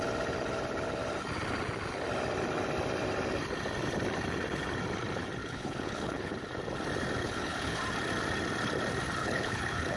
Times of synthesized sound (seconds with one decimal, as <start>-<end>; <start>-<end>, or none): 5.4-6.4; 7.2-7.8; 9.2-10.0